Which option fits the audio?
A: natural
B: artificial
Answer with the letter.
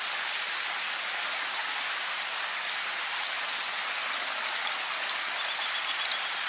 A